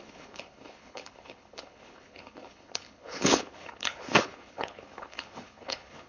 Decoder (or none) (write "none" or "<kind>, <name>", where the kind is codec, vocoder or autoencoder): codec, HILCodec